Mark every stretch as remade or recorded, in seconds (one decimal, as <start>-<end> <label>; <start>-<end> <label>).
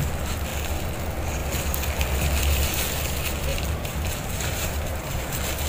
0.0-3.5 recorded; 3.5-5.3 remade; 5.3-5.7 recorded